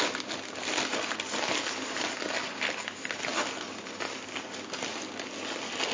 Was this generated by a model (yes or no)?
no